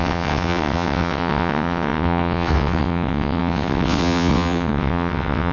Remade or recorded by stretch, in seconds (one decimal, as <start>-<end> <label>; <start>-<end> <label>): 0.0-5.5 remade